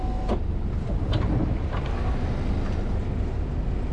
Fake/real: real